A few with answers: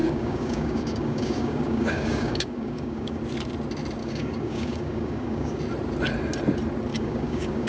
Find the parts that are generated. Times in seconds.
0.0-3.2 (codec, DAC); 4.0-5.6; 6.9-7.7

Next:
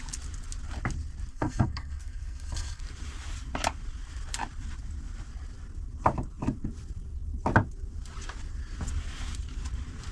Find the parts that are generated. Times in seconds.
1.3-2.8 (codec, SNAC)

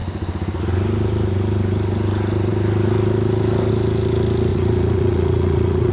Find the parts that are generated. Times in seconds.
4.5-5.9 (vocoder, Vocos)

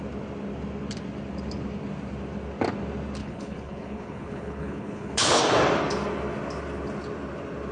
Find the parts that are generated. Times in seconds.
3.2-5.4 (codec, HILCodec)